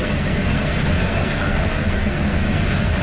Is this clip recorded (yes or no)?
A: no